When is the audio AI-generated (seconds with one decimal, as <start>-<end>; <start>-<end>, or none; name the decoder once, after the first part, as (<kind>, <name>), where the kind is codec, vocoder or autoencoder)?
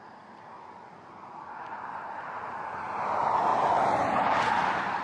3.5-4.4 (vocoder, BigVGAN v2)